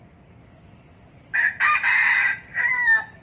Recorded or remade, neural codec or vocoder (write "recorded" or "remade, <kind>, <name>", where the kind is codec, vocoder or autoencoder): recorded